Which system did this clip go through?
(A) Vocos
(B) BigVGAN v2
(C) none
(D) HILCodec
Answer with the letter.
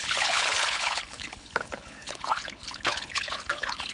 D